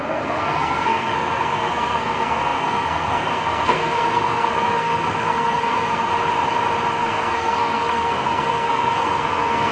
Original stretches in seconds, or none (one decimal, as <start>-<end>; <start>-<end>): 6.1-6.9